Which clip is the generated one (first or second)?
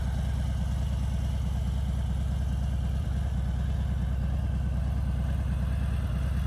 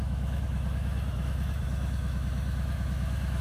second